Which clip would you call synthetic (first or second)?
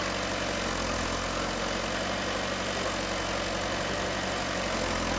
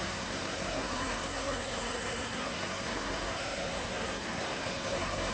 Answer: second